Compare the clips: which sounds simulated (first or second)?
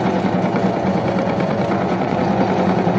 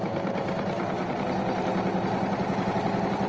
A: first